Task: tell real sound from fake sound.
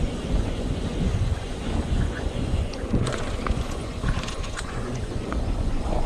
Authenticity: fake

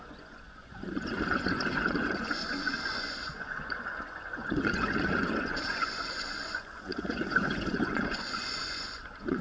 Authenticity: fake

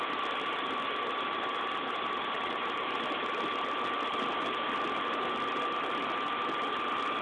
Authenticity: real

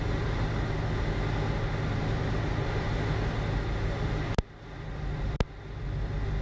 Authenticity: real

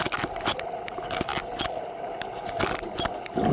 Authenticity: real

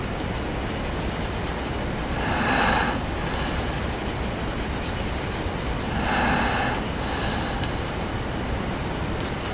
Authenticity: real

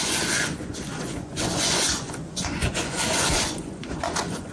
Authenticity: fake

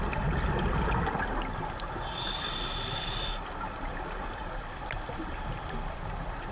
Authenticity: real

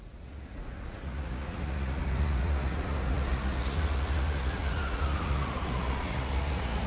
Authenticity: fake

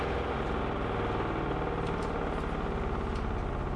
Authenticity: real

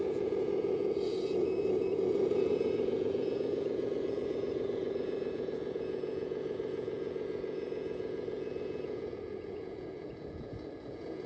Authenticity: fake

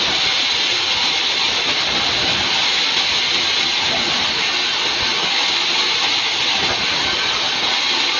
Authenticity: real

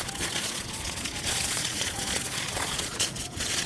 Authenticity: fake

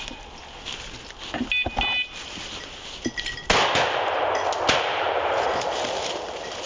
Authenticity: real